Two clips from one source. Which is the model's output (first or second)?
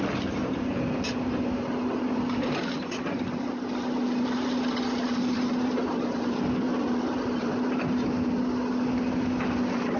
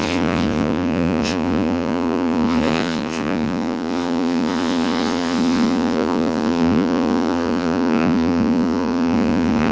second